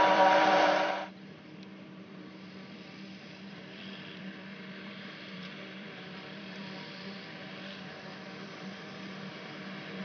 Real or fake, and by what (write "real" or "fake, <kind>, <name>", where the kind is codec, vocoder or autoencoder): fake, vocoder, BigVGAN v2